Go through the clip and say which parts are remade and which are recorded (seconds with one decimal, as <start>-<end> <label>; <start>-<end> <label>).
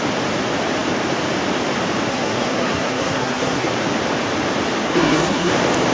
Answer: 0.0-2.1 recorded; 2.1-3.7 remade; 3.7-4.8 recorded; 4.8-5.5 remade; 5.5-5.9 recorded